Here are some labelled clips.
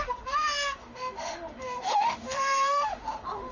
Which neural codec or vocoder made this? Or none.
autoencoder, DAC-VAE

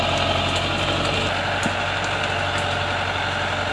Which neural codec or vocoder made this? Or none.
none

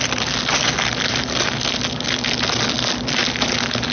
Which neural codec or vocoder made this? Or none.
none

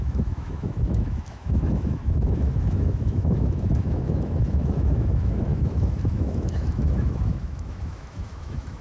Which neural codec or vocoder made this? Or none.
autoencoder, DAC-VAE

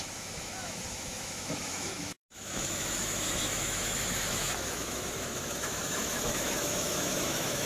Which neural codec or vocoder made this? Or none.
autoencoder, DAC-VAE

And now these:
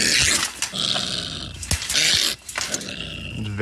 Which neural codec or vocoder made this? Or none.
none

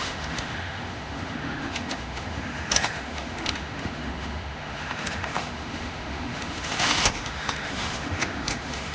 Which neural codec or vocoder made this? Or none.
autoencoder, DAC-VAE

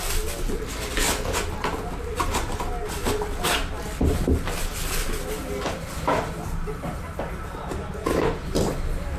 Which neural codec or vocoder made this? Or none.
none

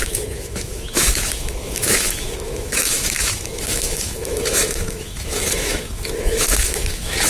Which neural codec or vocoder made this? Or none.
autoencoder, DAC-VAE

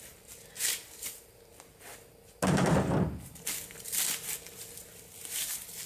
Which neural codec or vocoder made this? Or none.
none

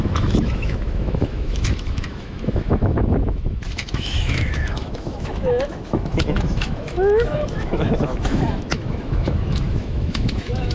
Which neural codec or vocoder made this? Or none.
autoencoder, DAC-VAE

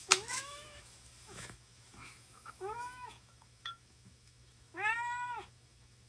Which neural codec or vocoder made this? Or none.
autoencoder, DAC-VAE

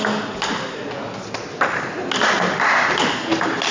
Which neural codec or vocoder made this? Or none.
none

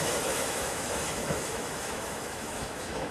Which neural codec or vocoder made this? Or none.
autoencoder, DAC-VAE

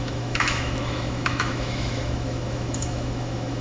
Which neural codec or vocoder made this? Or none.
autoencoder, DAC-VAE